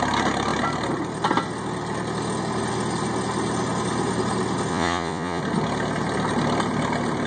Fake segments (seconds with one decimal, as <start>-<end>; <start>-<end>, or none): 4.7-5.4